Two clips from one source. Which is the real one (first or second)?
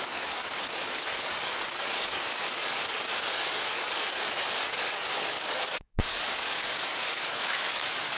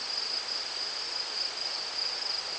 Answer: second